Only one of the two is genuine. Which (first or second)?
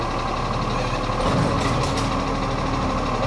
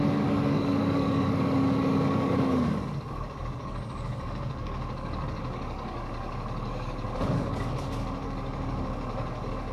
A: first